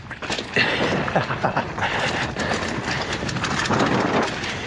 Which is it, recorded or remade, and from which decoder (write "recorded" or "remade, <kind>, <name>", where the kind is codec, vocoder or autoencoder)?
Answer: recorded